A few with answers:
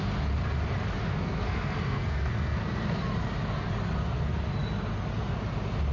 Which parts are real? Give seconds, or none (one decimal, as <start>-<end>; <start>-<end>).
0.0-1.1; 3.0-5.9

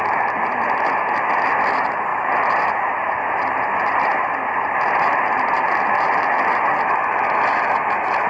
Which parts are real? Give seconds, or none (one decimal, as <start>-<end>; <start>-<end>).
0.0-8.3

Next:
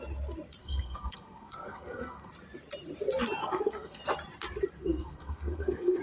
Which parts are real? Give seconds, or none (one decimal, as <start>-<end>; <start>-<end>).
0.0-0.6; 2.3-3.4; 4.0-4.8